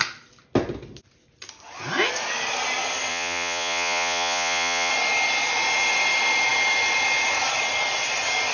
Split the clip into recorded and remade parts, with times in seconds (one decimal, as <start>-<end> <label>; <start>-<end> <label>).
0.0-3.1 recorded; 3.1-4.9 remade; 4.9-8.5 recorded